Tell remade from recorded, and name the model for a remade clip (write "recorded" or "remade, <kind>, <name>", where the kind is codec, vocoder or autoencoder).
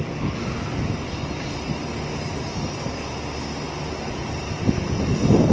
recorded